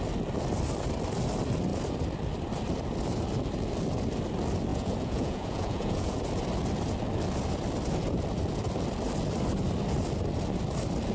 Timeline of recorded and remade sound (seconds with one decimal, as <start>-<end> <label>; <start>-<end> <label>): 0.0-4.7 recorded; 4.7-6.2 remade; 6.2-11.1 recorded